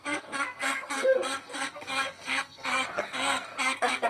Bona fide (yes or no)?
no